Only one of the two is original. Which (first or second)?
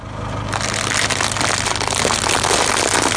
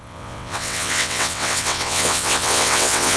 first